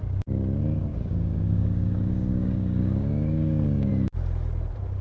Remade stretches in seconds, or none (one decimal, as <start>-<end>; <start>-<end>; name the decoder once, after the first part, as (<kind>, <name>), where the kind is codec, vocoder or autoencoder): 0.9-3.9 (codec, DAC)